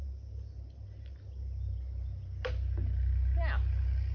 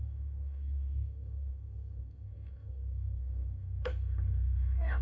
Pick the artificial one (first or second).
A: second